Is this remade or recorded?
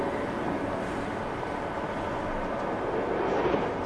recorded